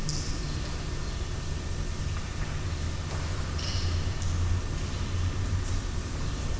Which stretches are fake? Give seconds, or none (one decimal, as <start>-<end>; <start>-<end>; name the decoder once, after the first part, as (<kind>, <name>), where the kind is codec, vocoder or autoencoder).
none